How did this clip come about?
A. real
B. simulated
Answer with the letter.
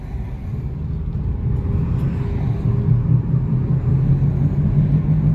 A